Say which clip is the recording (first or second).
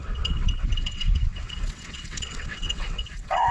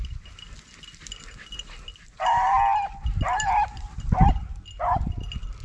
second